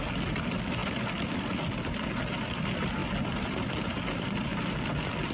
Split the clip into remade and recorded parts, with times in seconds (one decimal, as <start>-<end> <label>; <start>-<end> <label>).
0.0-5.3 recorded